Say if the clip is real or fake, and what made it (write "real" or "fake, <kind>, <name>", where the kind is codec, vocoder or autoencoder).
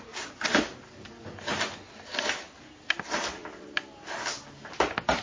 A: real